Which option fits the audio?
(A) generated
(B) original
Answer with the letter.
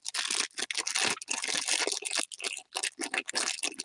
B